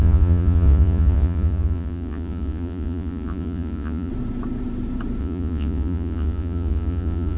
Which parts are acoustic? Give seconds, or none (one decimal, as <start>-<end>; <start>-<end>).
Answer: 4.1-5.2